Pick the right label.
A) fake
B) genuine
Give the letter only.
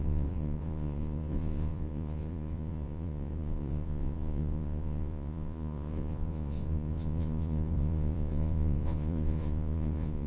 A